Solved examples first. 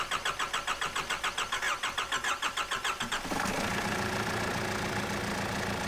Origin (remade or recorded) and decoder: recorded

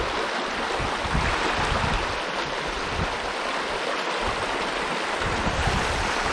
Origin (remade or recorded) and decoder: recorded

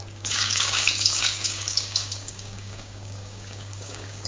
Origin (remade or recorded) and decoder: remade, codec, DAC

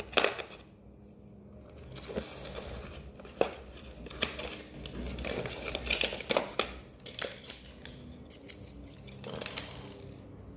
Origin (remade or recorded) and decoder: recorded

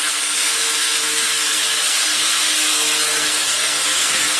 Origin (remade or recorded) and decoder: remade, codec, SNAC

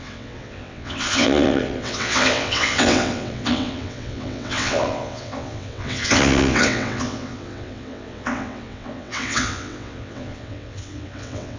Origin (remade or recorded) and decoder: remade, vocoder, WaveNeXt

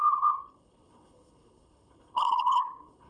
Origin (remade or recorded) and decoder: remade, codec, HILCodec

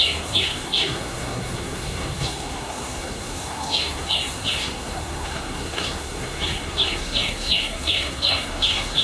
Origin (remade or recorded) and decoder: remade, codec, SNAC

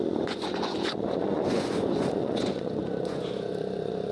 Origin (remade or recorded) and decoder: remade, vocoder, Vocos